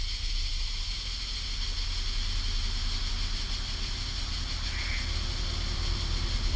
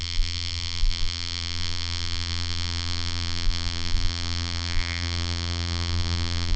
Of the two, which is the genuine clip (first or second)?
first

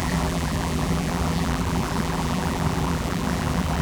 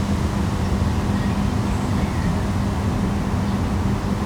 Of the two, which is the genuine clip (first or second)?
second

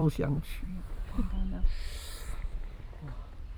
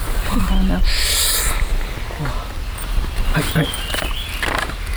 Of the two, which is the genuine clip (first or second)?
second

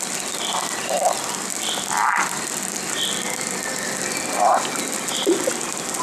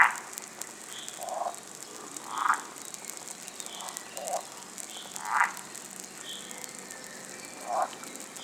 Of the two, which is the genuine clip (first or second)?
second